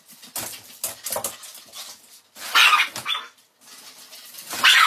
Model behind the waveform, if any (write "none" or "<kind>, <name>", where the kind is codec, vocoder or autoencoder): none